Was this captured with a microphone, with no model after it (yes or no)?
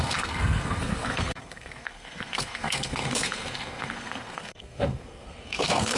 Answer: no